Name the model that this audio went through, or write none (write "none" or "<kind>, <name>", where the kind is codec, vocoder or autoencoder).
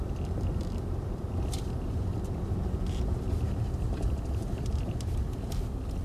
vocoder, BigVGAN v2